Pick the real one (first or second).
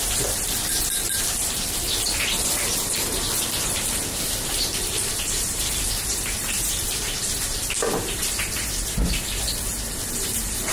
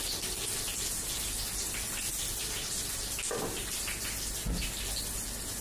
second